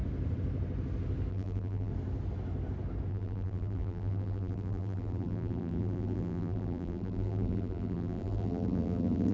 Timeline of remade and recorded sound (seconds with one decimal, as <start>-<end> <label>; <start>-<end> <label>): 0.0-1.3 recorded; 1.3-1.9 remade; 1.9-3.1 recorded; 3.1-9.3 remade